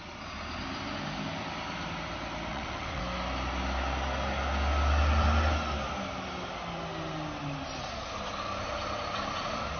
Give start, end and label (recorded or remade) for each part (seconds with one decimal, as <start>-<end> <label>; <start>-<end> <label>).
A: 0.0-2.5 recorded; 2.5-3.0 remade; 3.0-9.8 recorded